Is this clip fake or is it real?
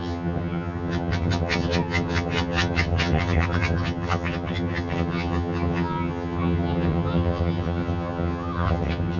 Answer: fake